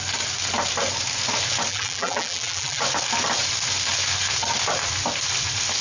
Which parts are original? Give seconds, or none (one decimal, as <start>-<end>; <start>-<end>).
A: 0.0-1.7; 2.8-5.8